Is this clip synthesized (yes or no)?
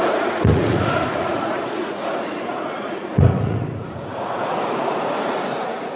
yes